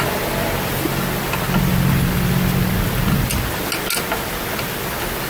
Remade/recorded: recorded